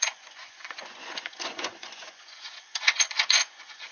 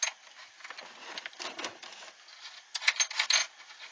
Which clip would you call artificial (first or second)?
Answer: first